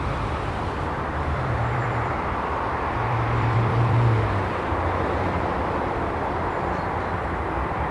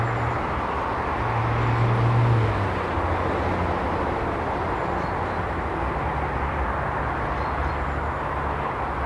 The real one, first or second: second